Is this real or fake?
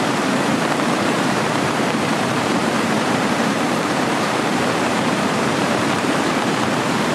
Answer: fake